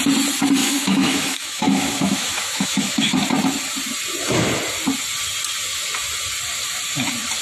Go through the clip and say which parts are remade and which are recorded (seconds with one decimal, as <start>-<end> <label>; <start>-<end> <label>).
0.0-0.6 recorded; 0.6-3.1 remade; 3.1-7.4 recorded